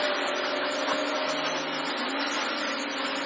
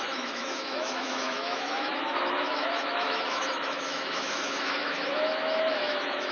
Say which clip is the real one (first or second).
first